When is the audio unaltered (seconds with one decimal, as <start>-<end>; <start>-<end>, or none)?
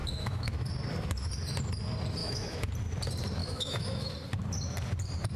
0.7-2.2; 2.7-3.4; 4.1-5.4